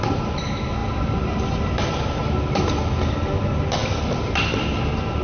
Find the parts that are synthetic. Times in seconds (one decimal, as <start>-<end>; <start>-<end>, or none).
none